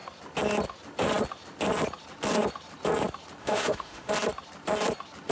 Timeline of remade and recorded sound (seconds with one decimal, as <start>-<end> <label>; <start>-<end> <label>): 0.0-3.4 recorded; 3.4-4.1 remade; 4.1-5.3 recorded

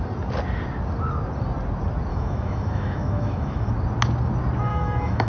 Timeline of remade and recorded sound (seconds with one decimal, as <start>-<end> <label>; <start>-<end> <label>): 0.0-2.1 recorded; 2.1-3.7 remade; 3.7-4.7 recorded; 4.7-5.3 remade

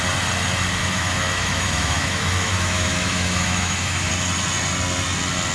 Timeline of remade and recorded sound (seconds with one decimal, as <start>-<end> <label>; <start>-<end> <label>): 0.0-0.8 recorded; 0.8-4.1 remade; 4.1-5.5 recorded

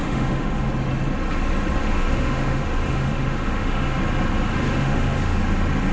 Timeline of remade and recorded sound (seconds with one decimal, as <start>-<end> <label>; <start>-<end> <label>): 0.0-0.7 remade; 0.7-1.8 recorded; 1.8-4.0 remade; 4.0-4.5 recorded; 4.5-5.4 remade; 5.4-5.9 recorded